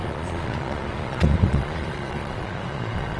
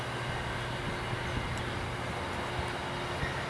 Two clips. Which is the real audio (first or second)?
second